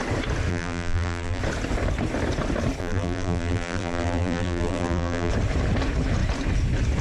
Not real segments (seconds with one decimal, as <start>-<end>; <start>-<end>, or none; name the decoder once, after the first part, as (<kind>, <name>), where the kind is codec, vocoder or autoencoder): 0.5-1.4 (vocoder, BigVGAN v2); 2.8-5.3